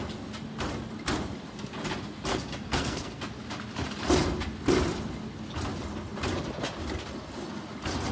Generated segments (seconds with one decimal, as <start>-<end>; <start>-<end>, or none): 2.3-3.2

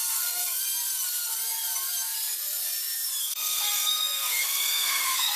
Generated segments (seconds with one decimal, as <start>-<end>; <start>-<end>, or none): 0.0-0.6; 3.2-5.4

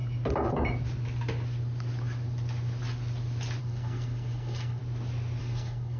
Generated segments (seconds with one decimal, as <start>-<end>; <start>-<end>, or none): 3.6-4.8; 5.4-6.0